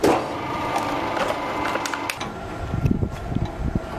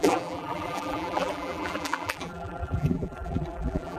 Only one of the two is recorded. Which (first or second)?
first